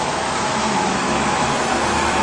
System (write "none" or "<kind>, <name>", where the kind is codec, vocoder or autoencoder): autoencoder, DAC-VAE